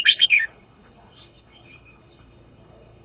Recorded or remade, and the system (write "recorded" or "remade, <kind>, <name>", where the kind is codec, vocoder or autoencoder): remade, codec, HILCodec